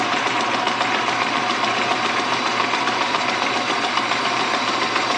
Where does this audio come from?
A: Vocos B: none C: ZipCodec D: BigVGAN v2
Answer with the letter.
D